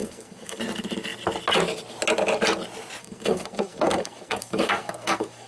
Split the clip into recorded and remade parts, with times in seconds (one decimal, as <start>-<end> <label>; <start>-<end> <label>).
0.0-0.6 remade; 0.6-3.0 recorded; 3.0-5.5 remade